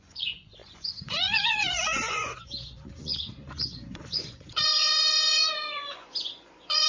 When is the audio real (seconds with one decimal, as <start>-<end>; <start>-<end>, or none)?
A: none